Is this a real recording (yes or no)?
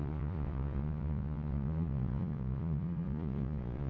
no